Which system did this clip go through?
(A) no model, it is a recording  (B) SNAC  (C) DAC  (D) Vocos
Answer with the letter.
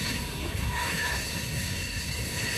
B